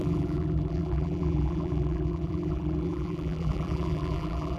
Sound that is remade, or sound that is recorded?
remade